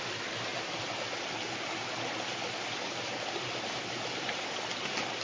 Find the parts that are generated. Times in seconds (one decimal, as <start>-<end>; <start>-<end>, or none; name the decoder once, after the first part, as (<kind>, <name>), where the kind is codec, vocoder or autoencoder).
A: none